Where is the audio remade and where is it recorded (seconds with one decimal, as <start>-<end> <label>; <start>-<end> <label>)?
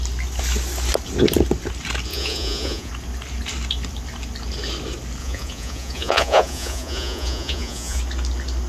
0.0-2.1 recorded; 2.1-2.9 remade; 2.9-5.2 recorded; 5.2-8.0 remade; 8.0-8.7 recorded